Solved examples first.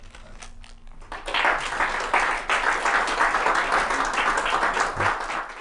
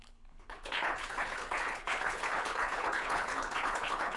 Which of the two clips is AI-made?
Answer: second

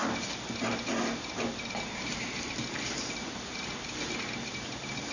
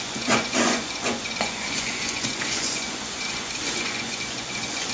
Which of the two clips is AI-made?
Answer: second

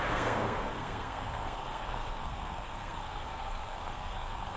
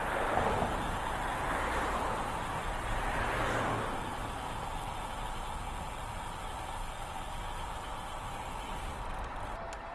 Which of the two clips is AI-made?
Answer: first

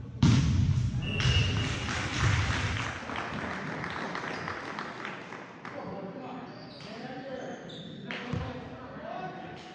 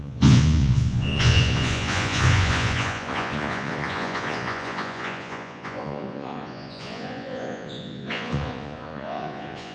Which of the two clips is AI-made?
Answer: second